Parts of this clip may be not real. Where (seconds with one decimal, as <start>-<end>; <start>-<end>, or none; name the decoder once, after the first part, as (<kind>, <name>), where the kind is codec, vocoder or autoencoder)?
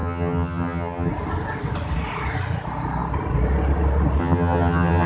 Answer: 0.0-1.1 (vocoder, HiFi-GAN); 4.2-5.1